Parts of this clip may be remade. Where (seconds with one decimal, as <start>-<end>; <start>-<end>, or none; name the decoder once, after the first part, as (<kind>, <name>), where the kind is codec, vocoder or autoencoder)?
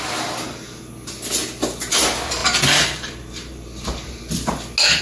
2.4-4.3 (vocoder, BigVGAN v2)